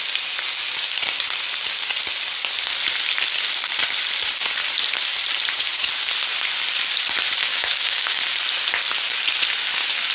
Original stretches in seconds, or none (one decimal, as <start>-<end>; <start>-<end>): 0.0-7.5; 8.2-10.1